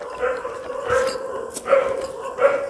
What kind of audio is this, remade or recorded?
recorded